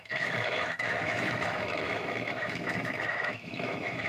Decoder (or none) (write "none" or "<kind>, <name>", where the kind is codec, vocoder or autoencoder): autoencoder, DAC-VAE